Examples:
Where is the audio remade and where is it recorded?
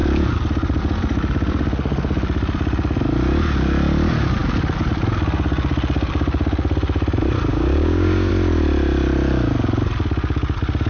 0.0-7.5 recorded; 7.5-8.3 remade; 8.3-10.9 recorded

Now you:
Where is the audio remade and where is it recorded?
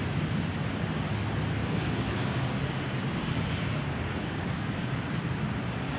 0.0-1.6 recorded; 1.6-4.9 remade; 4.9-6.0 recorded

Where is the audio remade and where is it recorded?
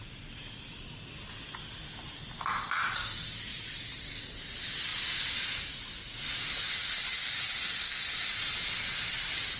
0.0-9.6 recorded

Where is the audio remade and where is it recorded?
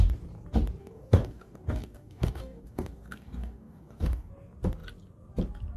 0.0-0.8 recorded; 0.8-4.3 remade; 4.3-5.8 recorded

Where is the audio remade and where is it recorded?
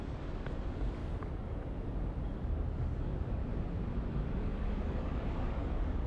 0.0-1.0 remade; 1.0-2.4 recorded; 2.4-3.4 remade; 3.4-4.1 recorded; 4.1-6.1 remade